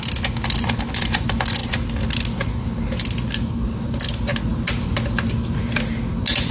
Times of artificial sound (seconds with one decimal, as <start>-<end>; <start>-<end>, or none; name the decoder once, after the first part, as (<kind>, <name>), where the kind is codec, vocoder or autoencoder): none